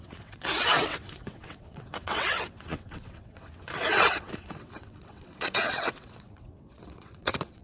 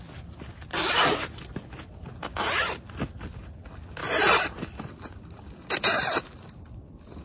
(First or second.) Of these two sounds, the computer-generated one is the first